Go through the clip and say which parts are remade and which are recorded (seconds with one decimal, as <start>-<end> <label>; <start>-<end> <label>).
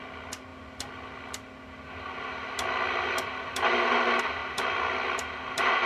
0.0-5.9 recorded